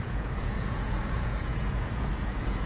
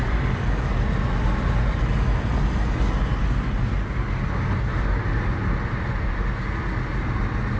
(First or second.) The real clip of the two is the second